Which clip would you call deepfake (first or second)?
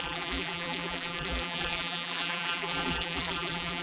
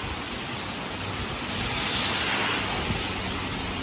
first